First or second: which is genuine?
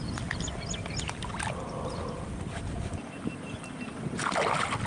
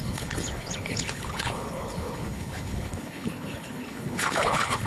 first